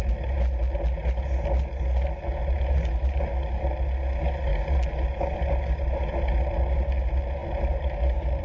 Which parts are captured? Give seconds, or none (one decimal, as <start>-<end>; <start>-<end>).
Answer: 0.0-2.4; 3.3-8.4